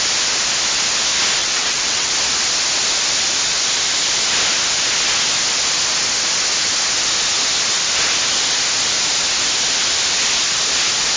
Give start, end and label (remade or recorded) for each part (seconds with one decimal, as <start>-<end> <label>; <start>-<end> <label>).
0.0-1.4 recorded; 1.4-2.1 remade; 2.1-11.2 recorded